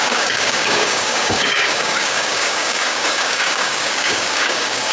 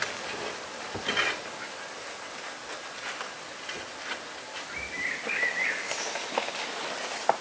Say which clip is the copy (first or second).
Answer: first